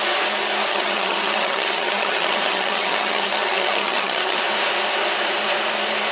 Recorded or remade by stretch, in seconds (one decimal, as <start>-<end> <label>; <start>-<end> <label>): 0.0-0.7 recorded; 0.7-4.4 remade; 4.4-6.1 recorded

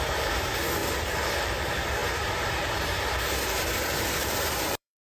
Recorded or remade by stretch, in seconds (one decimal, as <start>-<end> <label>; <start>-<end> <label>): 0.0-0.8 remade; 0.8-1.4 recorded; 1.4-5.1 remade